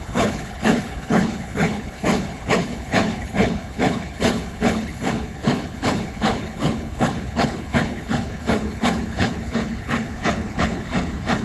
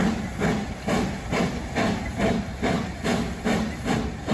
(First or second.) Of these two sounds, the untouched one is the second